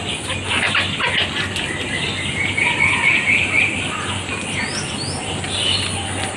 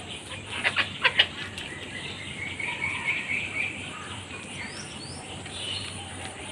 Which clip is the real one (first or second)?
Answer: first